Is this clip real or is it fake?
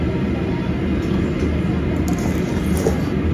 real